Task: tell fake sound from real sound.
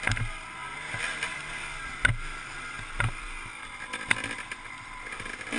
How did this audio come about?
real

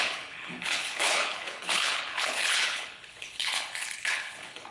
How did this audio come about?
fake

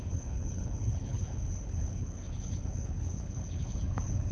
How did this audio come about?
fake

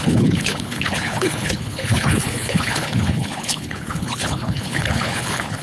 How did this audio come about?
fake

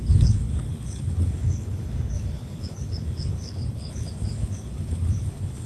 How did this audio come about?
fake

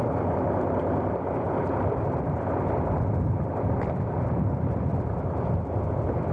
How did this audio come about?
real